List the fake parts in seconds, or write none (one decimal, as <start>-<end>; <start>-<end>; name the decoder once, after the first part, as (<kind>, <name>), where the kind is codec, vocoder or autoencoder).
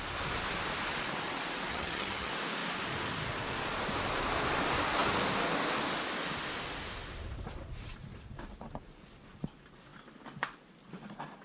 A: 1.7-2.3 (vocoder, HiFi-GAN)